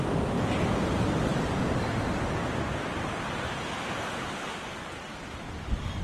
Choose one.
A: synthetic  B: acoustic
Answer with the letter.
B